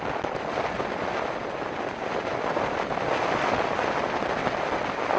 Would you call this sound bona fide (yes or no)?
yes